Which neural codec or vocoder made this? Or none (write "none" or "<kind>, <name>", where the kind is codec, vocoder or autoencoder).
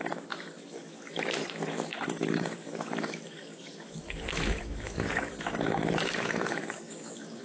autoencoder, DAC-VAE